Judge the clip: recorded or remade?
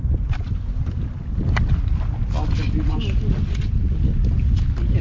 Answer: recorded